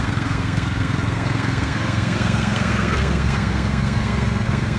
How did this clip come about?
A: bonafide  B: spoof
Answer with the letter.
B